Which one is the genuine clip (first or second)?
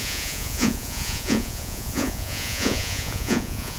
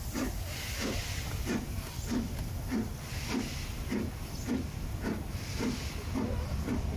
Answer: second